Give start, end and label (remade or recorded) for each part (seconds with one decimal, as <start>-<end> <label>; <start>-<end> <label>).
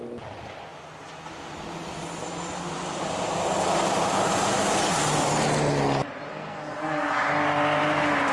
0.0-6.3 recorded; 6.3-7.2 remade; 7.2-8.3 recorded